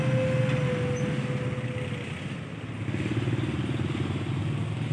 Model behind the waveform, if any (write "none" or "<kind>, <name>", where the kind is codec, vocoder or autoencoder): none